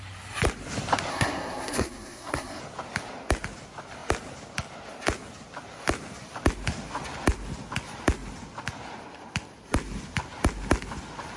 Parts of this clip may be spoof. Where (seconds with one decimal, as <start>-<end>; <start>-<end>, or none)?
1.1-2.6